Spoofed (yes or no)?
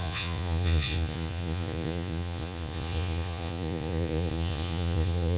yes